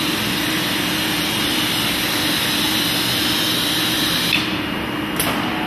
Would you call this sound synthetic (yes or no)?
no